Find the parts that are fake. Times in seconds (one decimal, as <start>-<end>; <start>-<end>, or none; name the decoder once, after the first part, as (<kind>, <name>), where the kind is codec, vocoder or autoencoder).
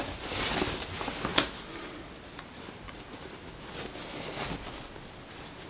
none